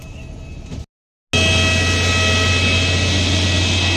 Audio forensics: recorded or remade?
recorded